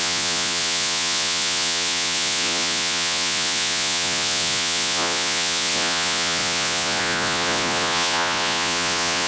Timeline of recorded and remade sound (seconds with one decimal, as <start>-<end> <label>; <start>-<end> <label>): 0.0-9.3 remade